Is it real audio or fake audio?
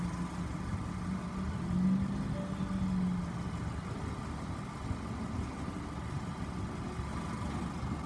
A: real